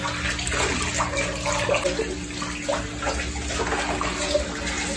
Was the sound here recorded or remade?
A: recorded